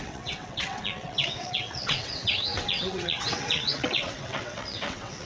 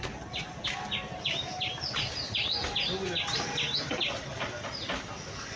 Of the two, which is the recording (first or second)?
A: second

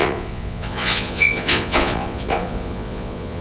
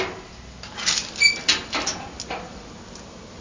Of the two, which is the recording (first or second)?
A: second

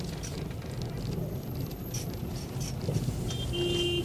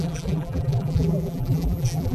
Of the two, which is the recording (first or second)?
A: first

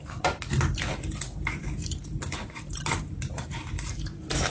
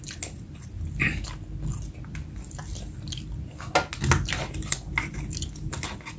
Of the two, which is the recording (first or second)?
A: second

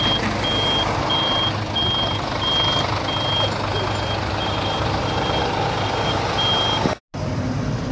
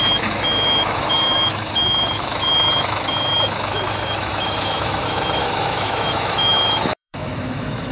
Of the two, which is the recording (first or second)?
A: first